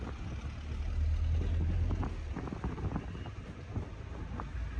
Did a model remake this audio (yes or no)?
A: no